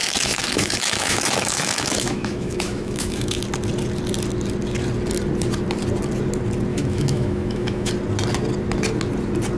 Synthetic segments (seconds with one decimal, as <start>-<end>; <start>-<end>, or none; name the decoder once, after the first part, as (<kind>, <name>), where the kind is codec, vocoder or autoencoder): 0.0-3.4 (autoencoder, DAC-VAE); 6.7-7.9

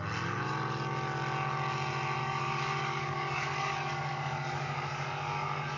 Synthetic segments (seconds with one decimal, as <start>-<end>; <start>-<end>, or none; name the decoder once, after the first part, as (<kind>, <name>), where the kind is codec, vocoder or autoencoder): 2.2-5.8 (codec, DAC)

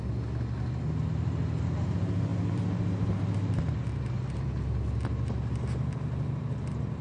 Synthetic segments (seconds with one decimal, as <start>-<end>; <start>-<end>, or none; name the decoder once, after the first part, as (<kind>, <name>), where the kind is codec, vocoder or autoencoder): none